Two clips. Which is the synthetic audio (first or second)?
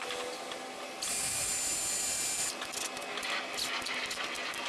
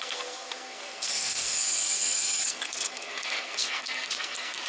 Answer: second